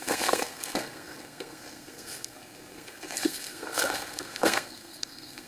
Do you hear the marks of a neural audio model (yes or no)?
yes